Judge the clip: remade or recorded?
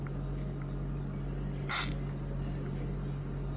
recorded